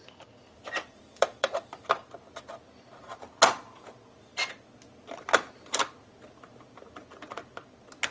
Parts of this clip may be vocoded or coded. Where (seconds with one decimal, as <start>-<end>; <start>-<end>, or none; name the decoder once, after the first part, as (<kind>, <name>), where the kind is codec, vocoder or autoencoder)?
0.0-1.8 (vocoder, BigVGAN v2)